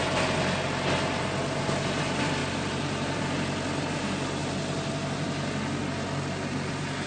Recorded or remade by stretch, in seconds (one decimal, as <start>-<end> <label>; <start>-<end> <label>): 0.0-2.4 recorded; 2.4-3.2 remade; 3.2-7.1 recorded